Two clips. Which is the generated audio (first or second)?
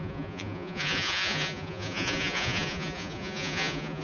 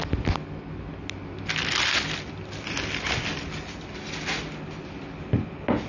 first